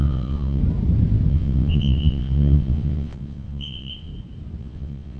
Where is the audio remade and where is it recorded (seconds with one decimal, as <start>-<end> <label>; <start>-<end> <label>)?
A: 0.0-0.6 remade; 0.6-1.3 recorded; 1.3-4.1 remade; 4.1-4.6 recorded; 4.6-5.2 remade